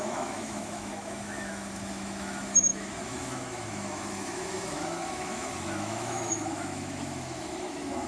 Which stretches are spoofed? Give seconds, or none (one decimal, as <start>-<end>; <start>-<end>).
0.0-8.1